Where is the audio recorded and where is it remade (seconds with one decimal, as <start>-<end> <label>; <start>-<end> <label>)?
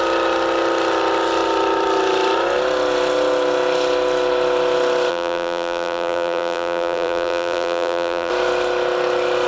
0.0-5.1 recorded; 5.1-8.3 remade; 8.3-9.5 recorded